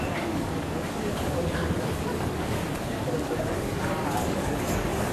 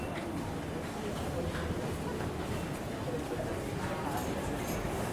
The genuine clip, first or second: second